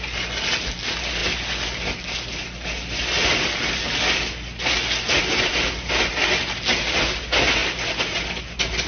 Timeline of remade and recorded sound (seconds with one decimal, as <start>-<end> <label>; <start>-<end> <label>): 0.0-8.9 recorded